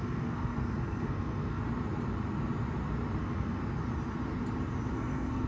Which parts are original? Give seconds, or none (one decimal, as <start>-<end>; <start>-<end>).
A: 1.6-3.2; 3.6-4.9